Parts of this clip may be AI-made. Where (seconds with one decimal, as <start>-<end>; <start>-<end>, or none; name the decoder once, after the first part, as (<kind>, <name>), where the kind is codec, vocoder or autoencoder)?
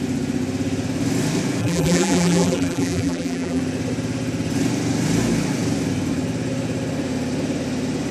1.6-3.6 (vocoder, BigVGAN v2)